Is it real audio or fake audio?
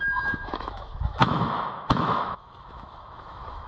fake